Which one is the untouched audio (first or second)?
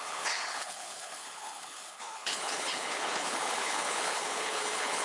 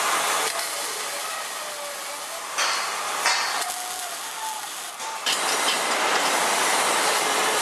second